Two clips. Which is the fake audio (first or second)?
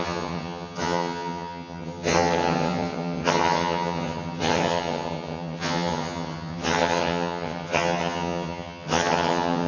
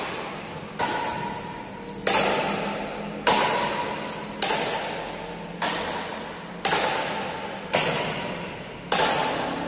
first